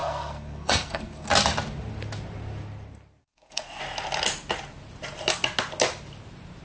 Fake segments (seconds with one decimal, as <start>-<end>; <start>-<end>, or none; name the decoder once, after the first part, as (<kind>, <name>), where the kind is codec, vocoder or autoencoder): 0.0-1.3 (codec, SNAC); 3.2-3.8